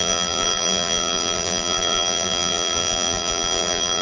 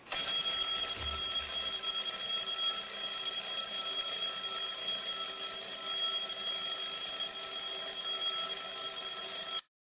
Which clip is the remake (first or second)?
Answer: first